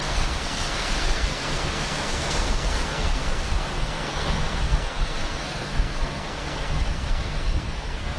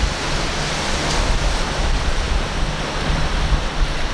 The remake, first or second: first